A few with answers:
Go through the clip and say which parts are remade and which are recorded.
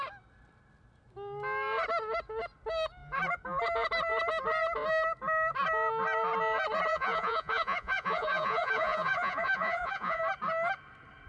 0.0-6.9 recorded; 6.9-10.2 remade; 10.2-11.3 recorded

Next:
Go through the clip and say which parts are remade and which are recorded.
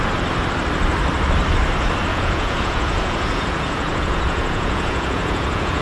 0.0-2.1 recorded; 2.1-5.8 remade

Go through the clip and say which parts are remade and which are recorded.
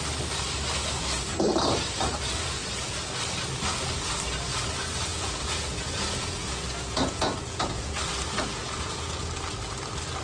0.0-5.1 recorded; 5.1-7.9 remade; 7.9-8.6 recorded; 8.6-9.2 remade; 9.2-10.2 recorded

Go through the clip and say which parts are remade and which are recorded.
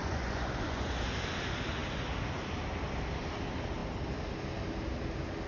0.0-0.9 remade; 0.9-5.5 recorded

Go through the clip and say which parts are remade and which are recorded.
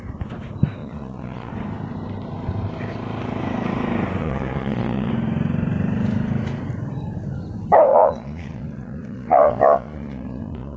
0.0-0.8 recorded; 0.8-1.5 remade; 1.5-4.2 recorded; 4.2-5.1 remade; 5.1-7.9 recorded; 7.9-10.8 remade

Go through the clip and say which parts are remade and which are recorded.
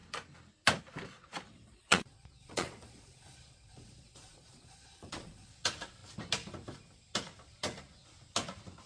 0.0-1.5 recorded; 1.5-5.5 remade; 5.5-8.9 recorded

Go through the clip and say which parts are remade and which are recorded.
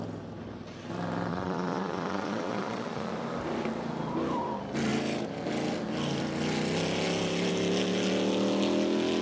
0.0-1.3 recorded; 1.3-3.1 remade; 3.1-9.2 recorded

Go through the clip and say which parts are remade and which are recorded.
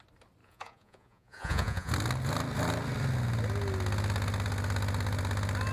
0.0-0.4 recorded; 0.4-1.9 remade; 1.9-5.7 recorded